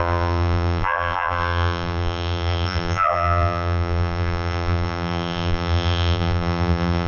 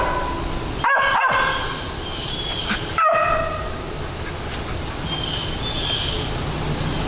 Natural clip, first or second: second